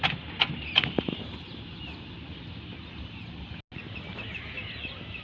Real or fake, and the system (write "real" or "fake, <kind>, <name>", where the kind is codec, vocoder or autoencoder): real